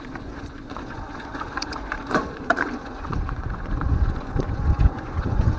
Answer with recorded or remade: remade